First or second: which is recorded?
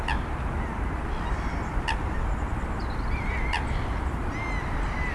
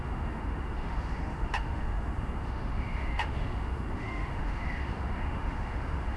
first